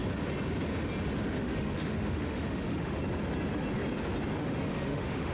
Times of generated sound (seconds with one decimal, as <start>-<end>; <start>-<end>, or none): 1.4-3.0; 4.4-5.3